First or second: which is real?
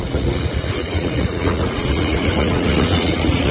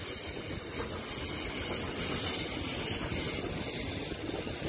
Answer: second